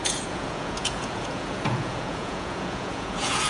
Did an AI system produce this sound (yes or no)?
yes